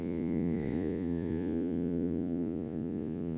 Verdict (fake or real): fake